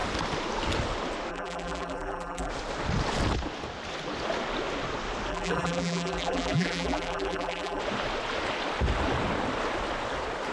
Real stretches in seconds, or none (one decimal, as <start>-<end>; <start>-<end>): 0.0-1.3; 2.5-5.3; 7.8-10.5